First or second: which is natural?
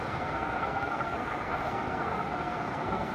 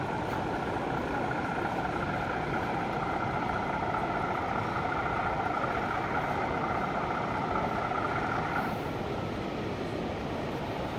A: second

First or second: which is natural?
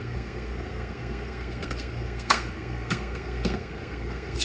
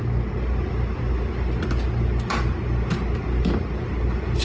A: second